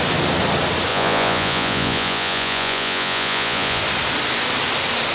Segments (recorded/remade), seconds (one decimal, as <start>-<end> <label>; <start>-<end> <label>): 0.0-0.9 recorded; 0.9-3.8 remade; 3.8-5.1 recorded